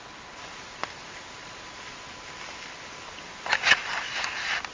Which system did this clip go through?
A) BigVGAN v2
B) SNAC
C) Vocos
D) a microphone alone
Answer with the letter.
D